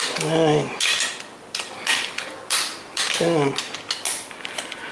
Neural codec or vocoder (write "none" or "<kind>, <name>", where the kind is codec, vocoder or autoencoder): none